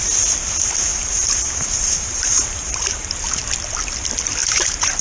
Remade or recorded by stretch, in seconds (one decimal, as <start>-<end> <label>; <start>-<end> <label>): 0.0-0.9 recorded; 0.9-3.1 remade; 3.1-4.4 recorded; 4.4-5.0 remade